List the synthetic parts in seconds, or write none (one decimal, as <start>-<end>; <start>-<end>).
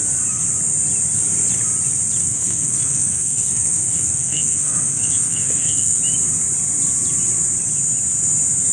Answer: 2.2-6.0